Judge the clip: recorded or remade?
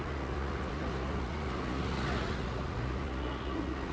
remade